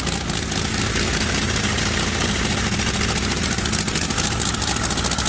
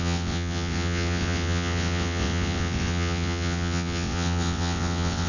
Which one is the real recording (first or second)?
first